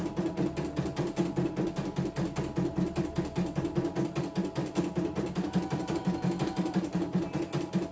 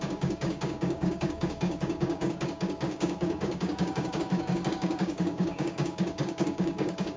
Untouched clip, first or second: first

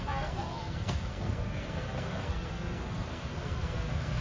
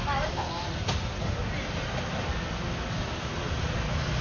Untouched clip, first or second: second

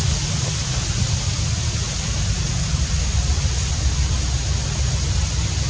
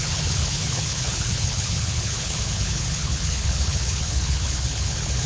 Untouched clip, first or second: first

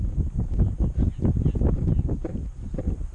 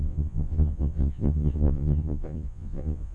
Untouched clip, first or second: first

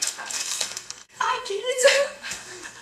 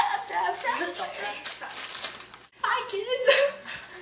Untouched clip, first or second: second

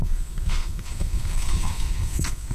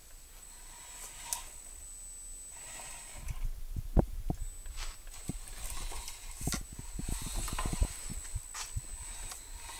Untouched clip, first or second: second